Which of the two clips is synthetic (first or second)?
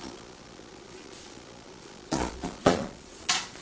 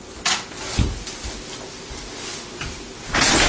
first